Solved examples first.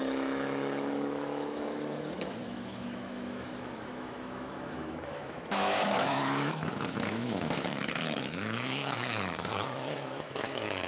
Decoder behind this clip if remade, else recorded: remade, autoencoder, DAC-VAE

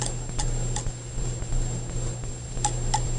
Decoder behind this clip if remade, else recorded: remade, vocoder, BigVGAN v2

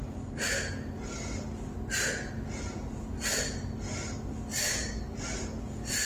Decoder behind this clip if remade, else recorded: recorded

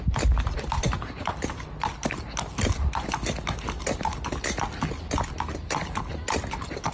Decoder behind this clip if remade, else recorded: recorded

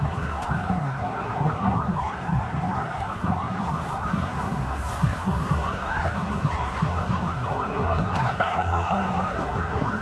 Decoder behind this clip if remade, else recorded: remade, codec, SNAC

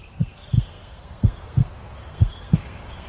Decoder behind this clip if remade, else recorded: remade, codec, SNAC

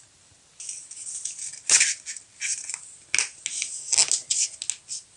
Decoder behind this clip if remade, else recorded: recorded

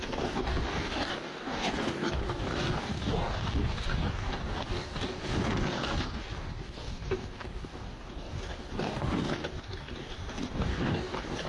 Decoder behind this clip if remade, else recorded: remade, codec, DAC